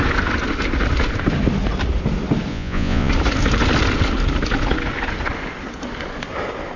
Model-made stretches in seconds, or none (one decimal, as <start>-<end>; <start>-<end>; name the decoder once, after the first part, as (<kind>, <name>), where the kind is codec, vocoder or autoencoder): 2.5-3.1 (vocoder, Vocos)